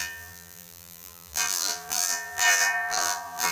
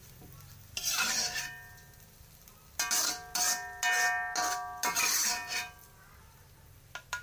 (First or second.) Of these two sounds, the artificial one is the first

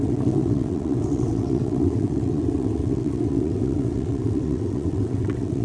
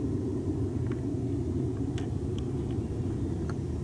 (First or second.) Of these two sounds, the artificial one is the first